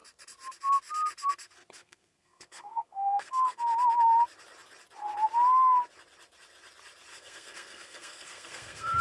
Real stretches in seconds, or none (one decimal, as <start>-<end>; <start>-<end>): 0.0-1.8; 3.6-7.1